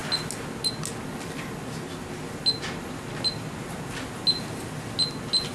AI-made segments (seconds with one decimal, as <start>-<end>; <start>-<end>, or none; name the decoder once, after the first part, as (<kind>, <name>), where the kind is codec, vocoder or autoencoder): none